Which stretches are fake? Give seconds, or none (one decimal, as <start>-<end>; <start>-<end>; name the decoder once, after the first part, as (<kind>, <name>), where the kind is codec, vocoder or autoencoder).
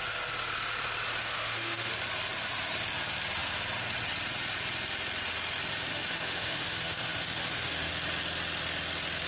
1.2-1.9 (autoencoder, DAC-VAE); 5.9-7.9